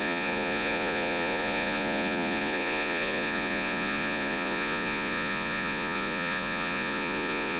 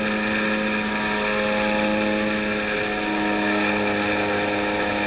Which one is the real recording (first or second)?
second